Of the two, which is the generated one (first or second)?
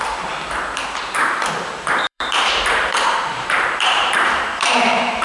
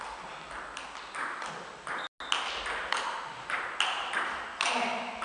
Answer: first